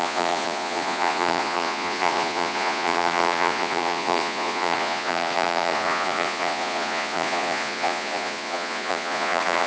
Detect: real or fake fake